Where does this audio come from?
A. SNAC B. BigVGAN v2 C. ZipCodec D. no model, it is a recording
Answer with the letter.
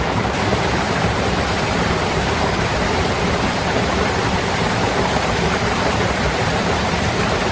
B